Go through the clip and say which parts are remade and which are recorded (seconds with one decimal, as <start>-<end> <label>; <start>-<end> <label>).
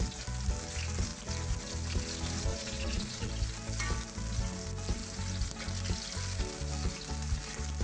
0.0-2.5 recorded; 2.5-3.3 remade; 3.3-7.8 recorded